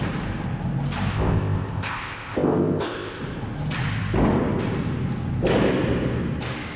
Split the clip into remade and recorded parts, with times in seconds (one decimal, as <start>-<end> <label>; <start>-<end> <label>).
0.0-1.1 recorded; 1.1-3.2 remade; 3.2-6.8 recorded